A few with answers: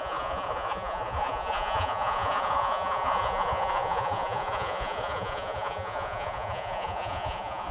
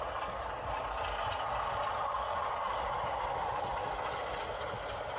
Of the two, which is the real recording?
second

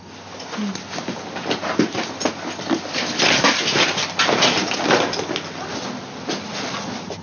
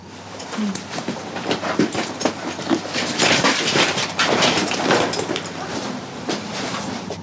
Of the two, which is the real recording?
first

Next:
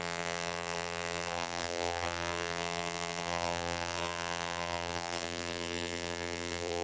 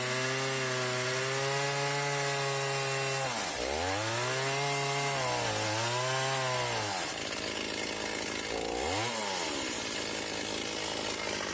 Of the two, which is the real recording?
second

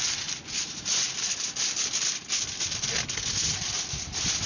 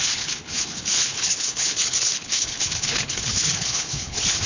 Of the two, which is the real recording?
first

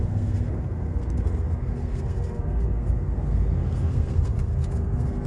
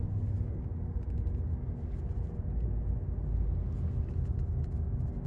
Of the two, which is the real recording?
second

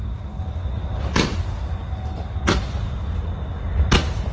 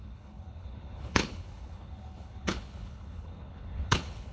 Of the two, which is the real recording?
first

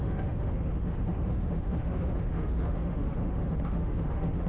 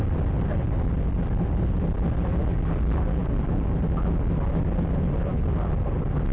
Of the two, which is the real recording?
second